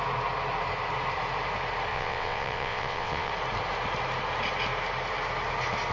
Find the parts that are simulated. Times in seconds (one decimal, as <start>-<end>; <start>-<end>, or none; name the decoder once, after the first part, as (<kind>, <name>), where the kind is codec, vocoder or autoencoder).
1.9-3.3 (vocoder, WaveNeXt)